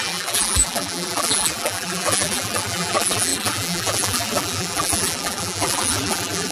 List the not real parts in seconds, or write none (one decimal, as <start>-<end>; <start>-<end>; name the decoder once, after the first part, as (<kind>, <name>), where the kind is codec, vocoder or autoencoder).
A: 0.0-6.5 (vocoder, BigVGAN v2)